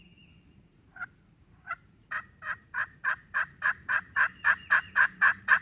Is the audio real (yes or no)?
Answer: no